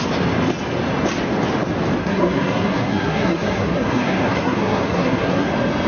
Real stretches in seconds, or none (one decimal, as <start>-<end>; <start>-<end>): 0.0-2.0; 5.5-5.9